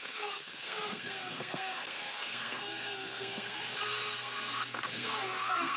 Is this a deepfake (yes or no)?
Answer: yes